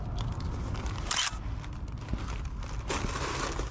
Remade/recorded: recorded